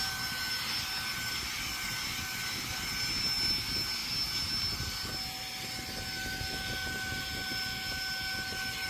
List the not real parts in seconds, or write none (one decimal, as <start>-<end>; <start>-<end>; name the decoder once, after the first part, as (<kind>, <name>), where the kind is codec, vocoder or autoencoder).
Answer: none

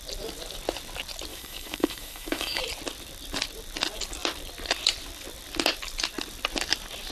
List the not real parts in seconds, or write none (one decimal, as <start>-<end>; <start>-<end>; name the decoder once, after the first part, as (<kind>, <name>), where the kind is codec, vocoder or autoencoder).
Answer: 1.3-2.6 (autoencoder, DAC-VAE)